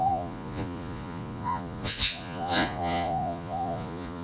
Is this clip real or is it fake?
fake